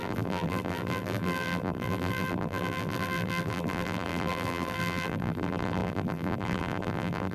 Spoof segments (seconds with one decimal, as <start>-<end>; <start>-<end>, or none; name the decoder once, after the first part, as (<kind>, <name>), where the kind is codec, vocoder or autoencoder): 0.0-7.3 (vocoder, BigVGAN v2)